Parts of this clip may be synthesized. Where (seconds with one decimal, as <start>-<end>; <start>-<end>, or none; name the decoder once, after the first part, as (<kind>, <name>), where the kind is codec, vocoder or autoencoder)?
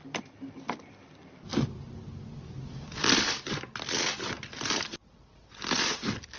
none